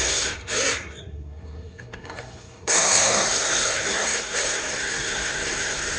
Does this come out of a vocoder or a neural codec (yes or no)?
yes